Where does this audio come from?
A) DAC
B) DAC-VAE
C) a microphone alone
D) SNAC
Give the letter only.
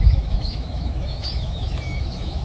B